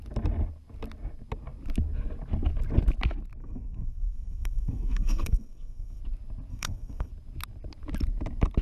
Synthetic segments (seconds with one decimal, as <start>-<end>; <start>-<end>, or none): 3.4-6.0; 6.5-7.1